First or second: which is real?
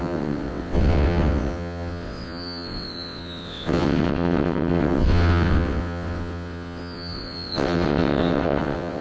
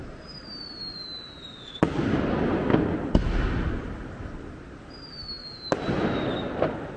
second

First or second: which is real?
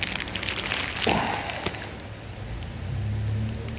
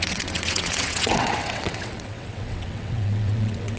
first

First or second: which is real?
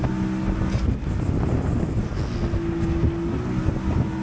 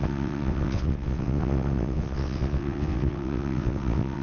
first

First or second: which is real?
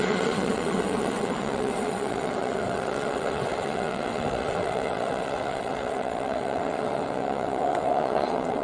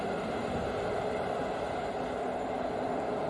second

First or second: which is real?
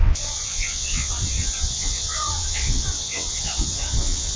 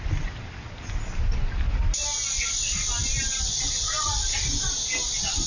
second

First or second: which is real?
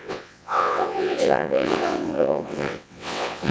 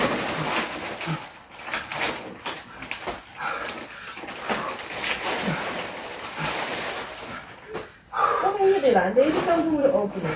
second